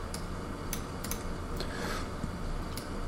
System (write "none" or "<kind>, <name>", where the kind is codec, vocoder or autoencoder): none